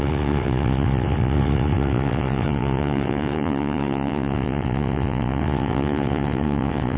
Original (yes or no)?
no